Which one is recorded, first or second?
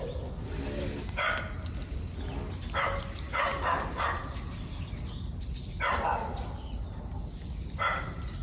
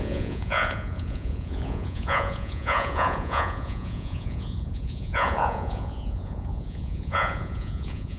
first